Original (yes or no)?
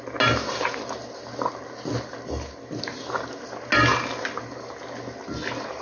yes